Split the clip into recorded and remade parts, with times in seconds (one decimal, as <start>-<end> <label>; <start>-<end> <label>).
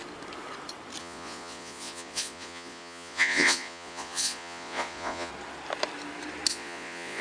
0.0-1.0 recorded; 1.0-5.3 remade; 5.3-6.5 recorded; 6.5-7.2 remade